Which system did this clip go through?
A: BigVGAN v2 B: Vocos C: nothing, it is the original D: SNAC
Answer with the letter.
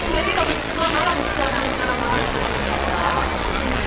B